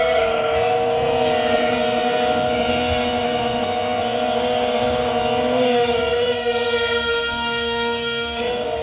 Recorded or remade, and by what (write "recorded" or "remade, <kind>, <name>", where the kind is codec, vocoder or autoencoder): remade, codec, SNAC